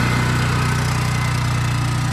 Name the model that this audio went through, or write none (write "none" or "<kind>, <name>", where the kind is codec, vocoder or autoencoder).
none